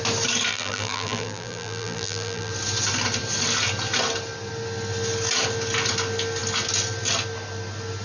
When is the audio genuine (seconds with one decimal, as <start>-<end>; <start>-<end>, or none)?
0.0-0.5; 2.5-8.0